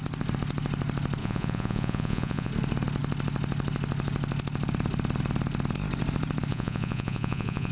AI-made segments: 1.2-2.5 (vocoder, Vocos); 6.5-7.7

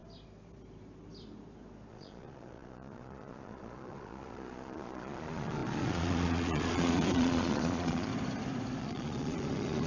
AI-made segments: 1.9-8.1 (vocoder, Vocos); 8.8-9.9

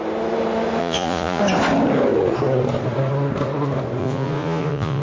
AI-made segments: 0.8-1.4 (vocoder, Vocos); 4.0-5.0

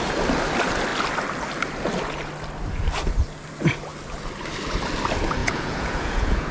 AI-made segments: 5.4-6.5 (vocoder, Vocos)

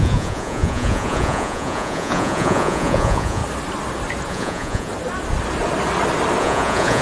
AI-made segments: 0.0-3.4 (vocoder, Vocos); 4.3-4.9; 6.4-7.0

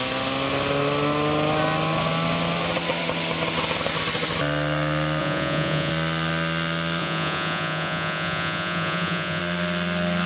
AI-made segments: 5.2-5.9 (vocoder, Vocos); 7.0-9.4

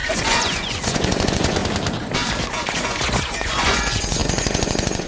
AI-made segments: 0.0-1.6 (vocoder, Vocos); 2.5-5.1

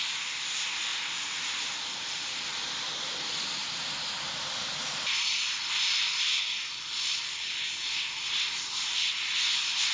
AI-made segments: none